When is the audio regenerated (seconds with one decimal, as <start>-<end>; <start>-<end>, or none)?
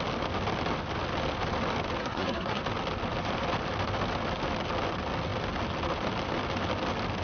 2.0-2.6